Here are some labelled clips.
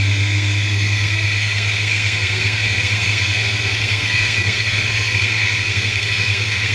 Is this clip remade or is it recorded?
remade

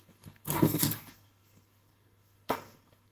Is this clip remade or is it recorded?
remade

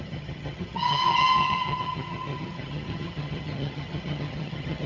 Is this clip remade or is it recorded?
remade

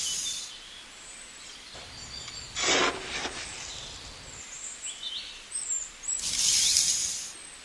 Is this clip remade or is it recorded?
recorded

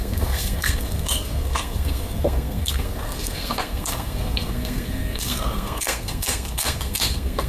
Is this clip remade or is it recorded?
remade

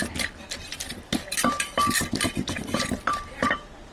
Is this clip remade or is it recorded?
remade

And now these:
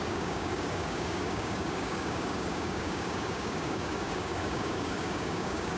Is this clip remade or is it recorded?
remade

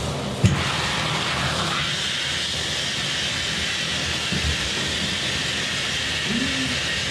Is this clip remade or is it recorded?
recorded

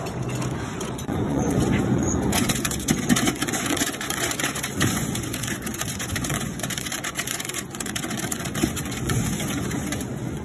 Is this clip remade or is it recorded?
remade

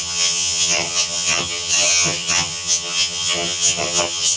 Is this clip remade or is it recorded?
remade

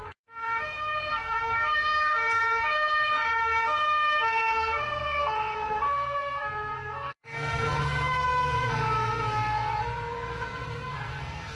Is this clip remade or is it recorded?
remade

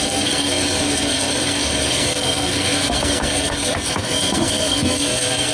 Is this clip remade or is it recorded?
remade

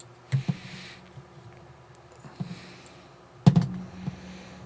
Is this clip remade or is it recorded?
recorded